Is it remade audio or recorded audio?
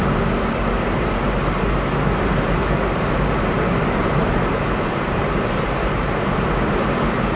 remade